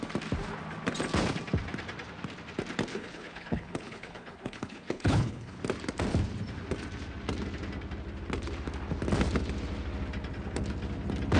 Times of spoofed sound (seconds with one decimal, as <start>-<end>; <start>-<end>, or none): 2.9-5.6